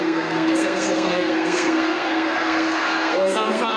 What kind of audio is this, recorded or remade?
remade